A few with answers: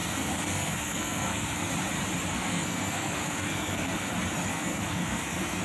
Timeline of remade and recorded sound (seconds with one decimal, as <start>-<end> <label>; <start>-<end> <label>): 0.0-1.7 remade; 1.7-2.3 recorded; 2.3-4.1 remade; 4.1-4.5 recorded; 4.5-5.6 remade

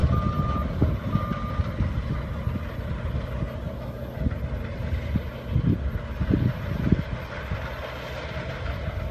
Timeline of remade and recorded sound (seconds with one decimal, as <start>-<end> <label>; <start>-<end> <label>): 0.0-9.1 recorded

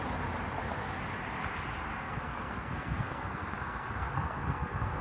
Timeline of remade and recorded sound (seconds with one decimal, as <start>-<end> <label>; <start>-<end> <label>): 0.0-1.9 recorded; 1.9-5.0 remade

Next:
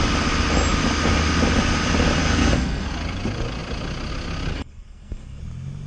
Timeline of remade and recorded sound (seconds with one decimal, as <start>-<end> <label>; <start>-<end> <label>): 0.0-2.2 recorded; 2.2-2.9 remade; 2.9-4.5 recorded; 4.5-5.4 remade; 5.4-5.9 recorded

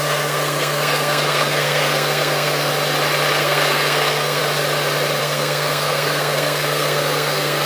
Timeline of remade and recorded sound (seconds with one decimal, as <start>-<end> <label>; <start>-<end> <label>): 0.0-2.7 remade; 2.7-3.4 recorded; 3.4-4.4 remade; 4.4-5.2 recorded; 5.2-7.7 remade